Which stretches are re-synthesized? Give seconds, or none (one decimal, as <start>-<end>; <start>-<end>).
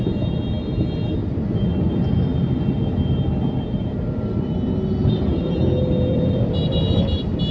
none